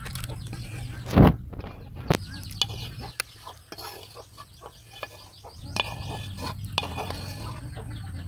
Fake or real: real